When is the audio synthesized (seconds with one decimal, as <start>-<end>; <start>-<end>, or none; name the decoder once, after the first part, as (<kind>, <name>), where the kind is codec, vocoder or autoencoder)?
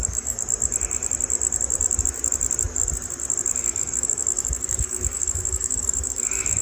0.0-0.4 (codec, DAC); 3.6-6.6